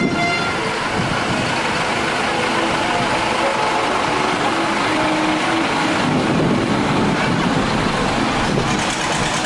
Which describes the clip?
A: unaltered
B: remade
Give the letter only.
A